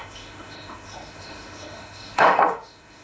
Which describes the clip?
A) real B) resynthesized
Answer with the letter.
B